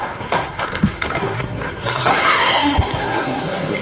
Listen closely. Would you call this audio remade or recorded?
remade